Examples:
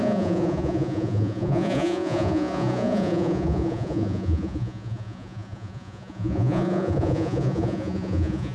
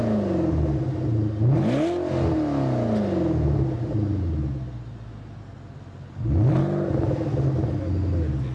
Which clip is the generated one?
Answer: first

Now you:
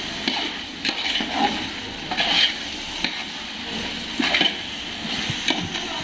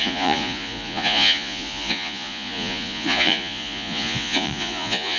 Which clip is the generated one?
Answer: second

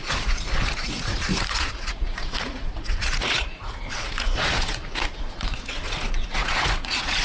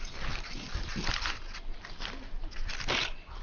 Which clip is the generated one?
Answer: first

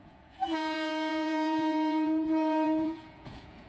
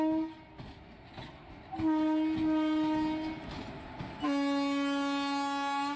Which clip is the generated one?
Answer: first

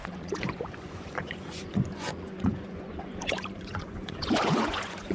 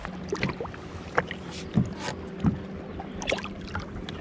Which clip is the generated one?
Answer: first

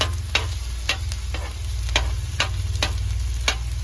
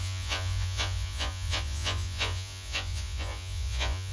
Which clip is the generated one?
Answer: second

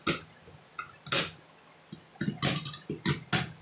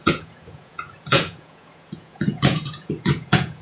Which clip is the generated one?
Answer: second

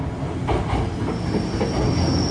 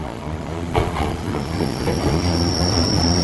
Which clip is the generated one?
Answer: second